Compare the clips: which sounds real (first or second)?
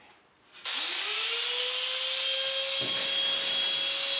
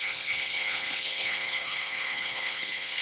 first